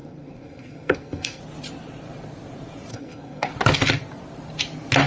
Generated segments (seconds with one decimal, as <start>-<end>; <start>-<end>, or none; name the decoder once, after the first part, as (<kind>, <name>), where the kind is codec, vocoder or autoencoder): 0.0-1.4 (codec, SNAC); 2.9-3.5